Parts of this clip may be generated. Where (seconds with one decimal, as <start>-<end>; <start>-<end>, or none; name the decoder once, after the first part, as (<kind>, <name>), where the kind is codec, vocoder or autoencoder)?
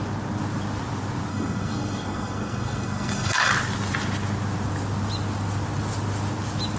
1.3-3.5 (codec, SNAC)